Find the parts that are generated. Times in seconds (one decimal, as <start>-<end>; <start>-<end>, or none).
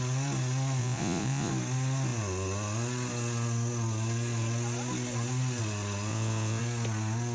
0.8-1.5; 6.1-6.6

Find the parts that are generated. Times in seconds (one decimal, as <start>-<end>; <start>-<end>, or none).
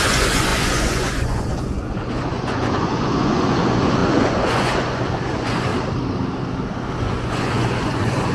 0.0-5.7; 7.0-8.3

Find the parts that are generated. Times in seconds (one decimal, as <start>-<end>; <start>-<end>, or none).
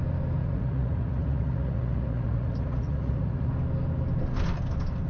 0.4-3.5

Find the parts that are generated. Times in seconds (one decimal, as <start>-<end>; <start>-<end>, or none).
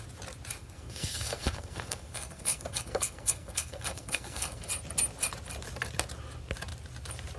0.6-4.7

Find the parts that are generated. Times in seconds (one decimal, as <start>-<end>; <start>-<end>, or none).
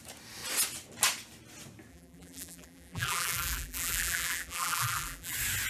1.9-5.3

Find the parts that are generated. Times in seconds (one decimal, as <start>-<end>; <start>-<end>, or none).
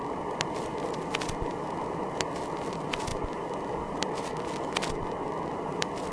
0.0-0.7; 1.7-3.1; 3.7-4.3; 4.9-6.1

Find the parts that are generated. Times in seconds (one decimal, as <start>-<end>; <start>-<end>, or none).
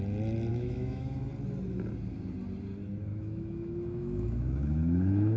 0.5-1.3; 3.1-5.4